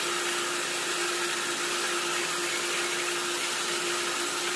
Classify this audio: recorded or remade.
recorded